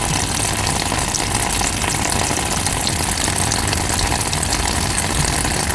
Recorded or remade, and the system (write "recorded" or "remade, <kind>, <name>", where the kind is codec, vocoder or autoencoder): recorded